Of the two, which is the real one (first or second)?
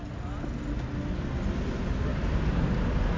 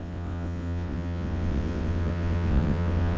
first